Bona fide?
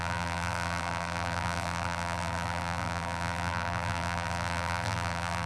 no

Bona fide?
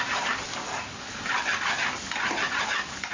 yes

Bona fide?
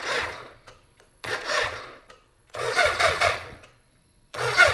no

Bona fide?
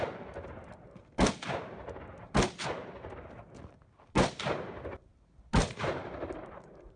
yes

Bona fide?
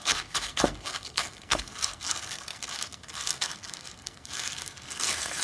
no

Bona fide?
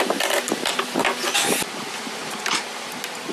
yes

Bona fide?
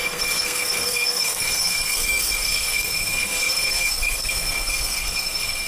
no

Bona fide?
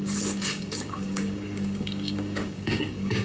no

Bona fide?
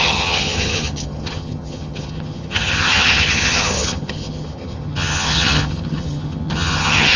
no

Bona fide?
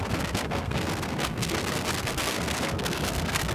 no